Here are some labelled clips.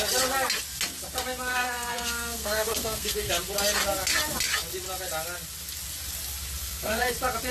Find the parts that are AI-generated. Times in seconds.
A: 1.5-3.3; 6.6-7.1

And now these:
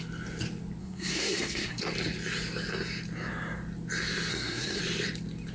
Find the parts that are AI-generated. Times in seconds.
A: 0.8-1.8; 4.3-4.8

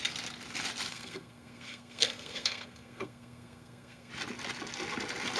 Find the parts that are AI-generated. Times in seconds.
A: 0.9-4.1

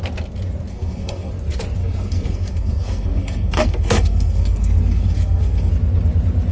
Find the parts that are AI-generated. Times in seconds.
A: 0.7-1.3; 1.8-5.7

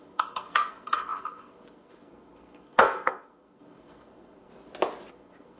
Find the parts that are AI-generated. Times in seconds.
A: 0.0-4.5; 5.1-5.6

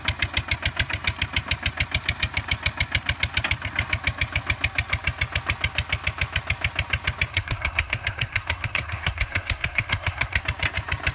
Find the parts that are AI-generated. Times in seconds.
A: 7.3-10.4

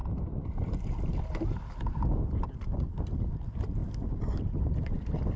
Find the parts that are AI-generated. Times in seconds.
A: none

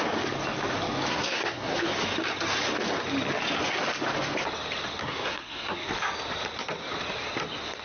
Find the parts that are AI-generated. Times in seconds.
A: 1.1-1.9; 5.0-5.9